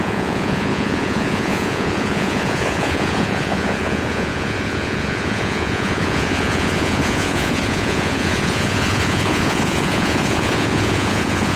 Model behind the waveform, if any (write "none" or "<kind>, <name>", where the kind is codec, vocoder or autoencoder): vocoder, Vocos